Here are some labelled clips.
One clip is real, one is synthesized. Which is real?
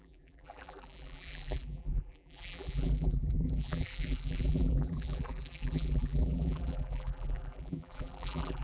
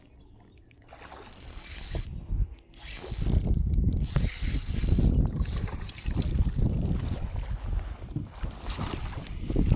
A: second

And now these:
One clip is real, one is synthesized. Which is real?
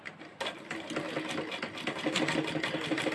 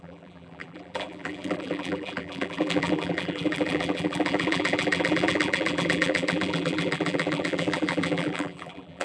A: first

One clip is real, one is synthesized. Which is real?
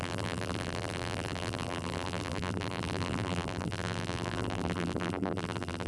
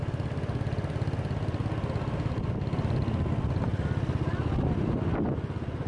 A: second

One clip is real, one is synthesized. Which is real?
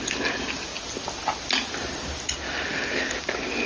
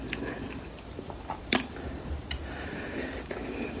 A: first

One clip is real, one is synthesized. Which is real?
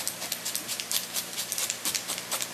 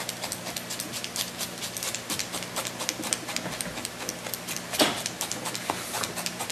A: second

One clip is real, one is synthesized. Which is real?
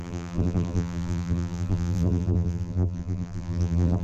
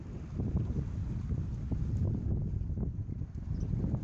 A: second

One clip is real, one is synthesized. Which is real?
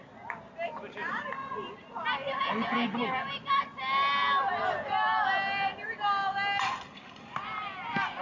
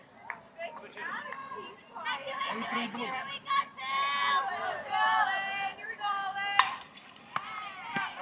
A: first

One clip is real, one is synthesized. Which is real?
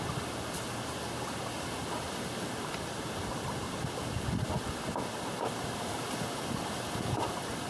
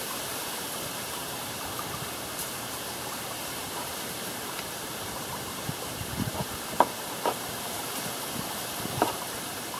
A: first